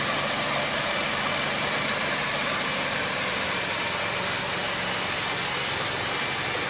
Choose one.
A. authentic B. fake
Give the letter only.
A